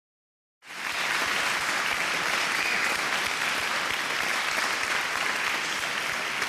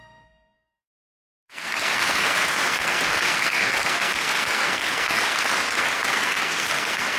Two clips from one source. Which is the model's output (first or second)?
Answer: second